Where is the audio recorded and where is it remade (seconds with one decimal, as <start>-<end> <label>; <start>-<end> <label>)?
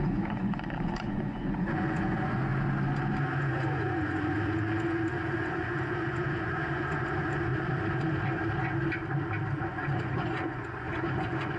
0.0-2.5 remade; 2.5-3.4 recorded; 3.4-7.5 remade; 7.5-9.6 recorded; 9.6-11.6 remade